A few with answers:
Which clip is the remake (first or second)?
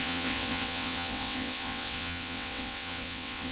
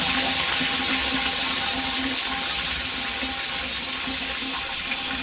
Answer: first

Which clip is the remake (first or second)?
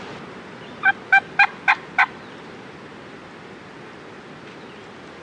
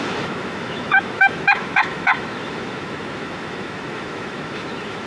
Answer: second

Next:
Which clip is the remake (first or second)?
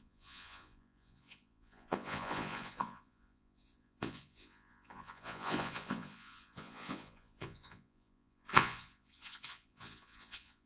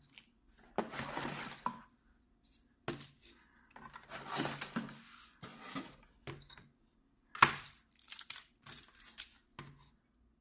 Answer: first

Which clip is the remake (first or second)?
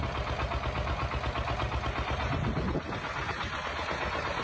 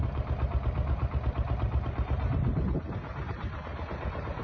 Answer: second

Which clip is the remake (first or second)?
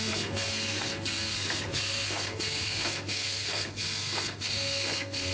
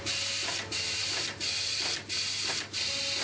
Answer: first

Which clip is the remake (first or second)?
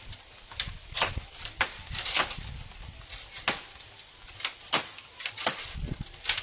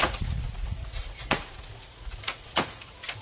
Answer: second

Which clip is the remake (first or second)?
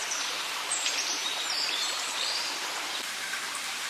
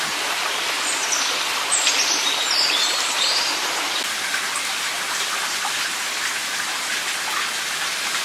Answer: first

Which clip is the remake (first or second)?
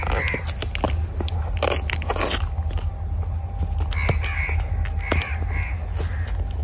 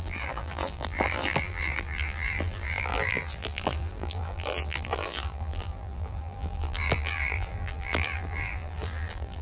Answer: second